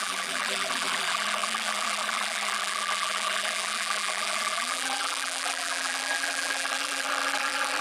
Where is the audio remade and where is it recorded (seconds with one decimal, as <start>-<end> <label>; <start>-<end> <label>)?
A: 0.0-7.8 remade